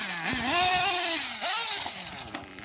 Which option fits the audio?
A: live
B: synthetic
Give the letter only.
A